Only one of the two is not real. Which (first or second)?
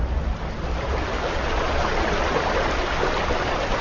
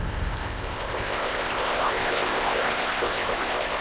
second